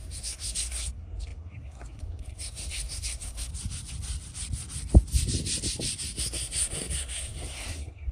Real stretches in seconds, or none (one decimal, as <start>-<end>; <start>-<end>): 3.5-6.2

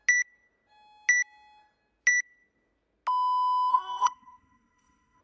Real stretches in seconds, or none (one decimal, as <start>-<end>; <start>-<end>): 0.0-3.7

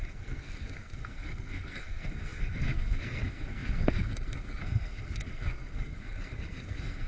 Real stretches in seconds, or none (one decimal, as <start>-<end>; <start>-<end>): none

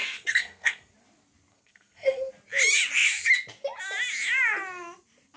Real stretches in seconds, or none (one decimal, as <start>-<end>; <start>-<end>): 0.9-1.5; 2.3-5.4